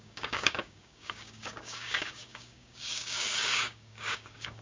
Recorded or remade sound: remade